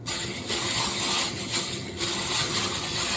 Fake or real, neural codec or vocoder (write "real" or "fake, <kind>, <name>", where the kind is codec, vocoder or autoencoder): fake, vocoder, HiFi-GAN